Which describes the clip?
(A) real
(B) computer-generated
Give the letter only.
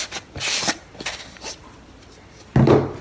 A